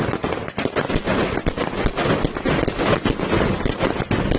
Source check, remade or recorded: recorded